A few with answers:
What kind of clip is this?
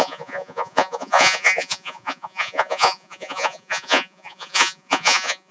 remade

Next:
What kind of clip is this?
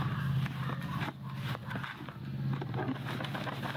recorded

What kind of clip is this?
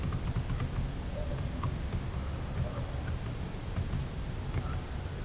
recorded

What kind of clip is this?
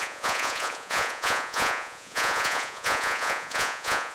remade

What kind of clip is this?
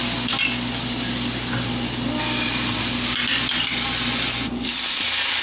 recorded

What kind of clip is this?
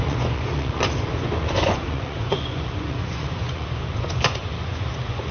remade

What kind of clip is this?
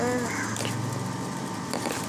recorded